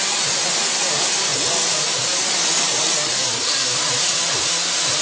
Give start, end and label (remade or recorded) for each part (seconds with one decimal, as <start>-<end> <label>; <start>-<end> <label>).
0.0-5.0 recorded